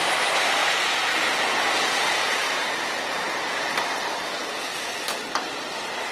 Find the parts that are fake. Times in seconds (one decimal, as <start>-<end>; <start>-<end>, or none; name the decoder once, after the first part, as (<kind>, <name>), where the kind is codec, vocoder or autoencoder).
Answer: 0.6-3.7 (vocoder, Vocos); 4.4-4.9